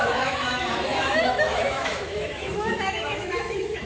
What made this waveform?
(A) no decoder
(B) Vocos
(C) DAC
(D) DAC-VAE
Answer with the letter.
D